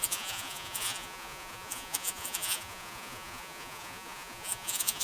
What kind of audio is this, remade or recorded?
remade